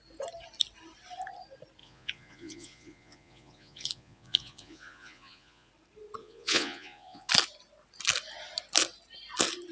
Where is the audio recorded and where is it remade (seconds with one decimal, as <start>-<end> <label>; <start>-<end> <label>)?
0.0-1.8 recorded; 1.8-5.7 remade; 5.7-6.2 recorded; 6.2-7.3 remade; 7.3-9.7 recorded